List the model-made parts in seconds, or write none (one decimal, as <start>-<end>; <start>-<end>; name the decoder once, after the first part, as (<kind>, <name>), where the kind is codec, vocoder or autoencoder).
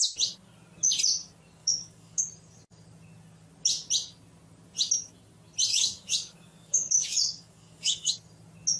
1.6-2.2 (codec, DAC); 5.7-8.1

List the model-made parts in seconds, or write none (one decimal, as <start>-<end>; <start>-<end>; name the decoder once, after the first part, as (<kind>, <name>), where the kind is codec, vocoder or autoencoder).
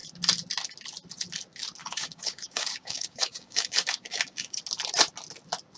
1.8-4.6 (codec, DAC)